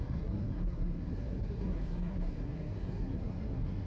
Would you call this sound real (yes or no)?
no